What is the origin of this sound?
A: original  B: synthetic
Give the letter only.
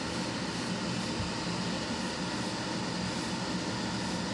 A